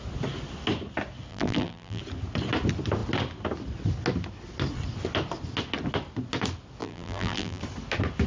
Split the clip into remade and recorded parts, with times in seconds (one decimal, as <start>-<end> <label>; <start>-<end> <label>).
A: 0.0-1.3 recorded; 1.3-2.0 remade; 2.0-6.8 recorded; 6.8-7.6 remade; 7.6-8.3 recorded